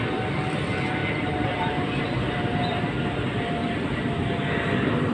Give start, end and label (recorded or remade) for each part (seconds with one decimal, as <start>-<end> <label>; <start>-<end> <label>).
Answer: 0.0-1.0 recorded; 1.0-2.4 remade; 2.4-5.1 recorded